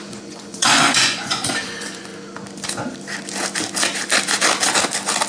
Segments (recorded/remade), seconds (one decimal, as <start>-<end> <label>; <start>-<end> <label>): 0.0-2.1 remade; 2.1-5.3 recorded